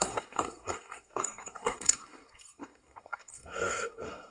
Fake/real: fake